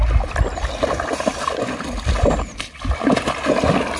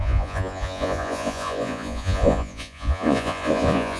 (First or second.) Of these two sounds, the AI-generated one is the second